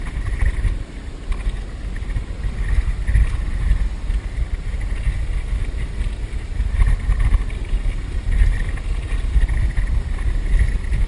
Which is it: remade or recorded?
recorded